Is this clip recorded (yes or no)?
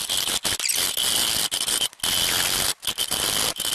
yes